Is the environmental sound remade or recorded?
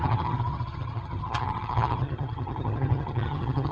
remade